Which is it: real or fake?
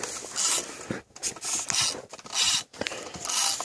real